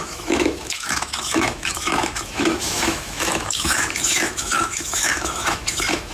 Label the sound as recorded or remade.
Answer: remade